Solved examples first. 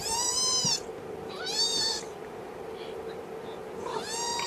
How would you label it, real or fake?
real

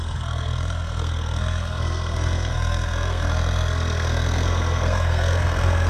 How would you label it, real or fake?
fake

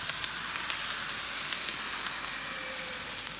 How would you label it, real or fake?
real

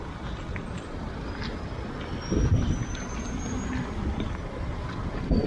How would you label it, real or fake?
real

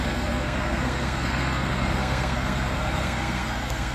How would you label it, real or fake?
fake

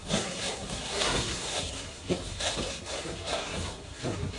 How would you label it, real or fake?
fake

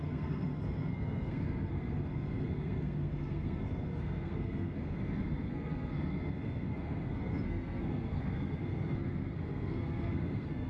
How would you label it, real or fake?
fake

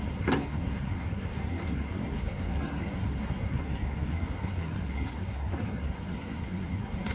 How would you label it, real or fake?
fake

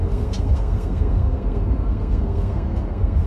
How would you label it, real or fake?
fake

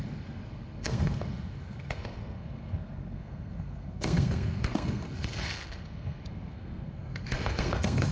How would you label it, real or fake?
fake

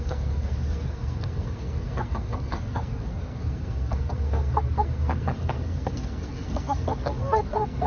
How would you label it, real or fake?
fake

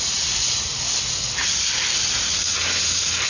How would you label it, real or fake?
real